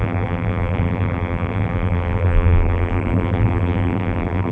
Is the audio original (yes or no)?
no